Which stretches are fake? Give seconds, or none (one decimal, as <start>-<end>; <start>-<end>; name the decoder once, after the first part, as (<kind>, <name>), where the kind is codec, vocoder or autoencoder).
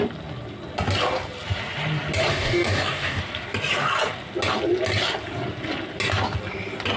2.3-3.2 (codec, DAC)